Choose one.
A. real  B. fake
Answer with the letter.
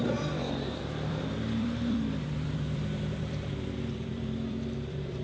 B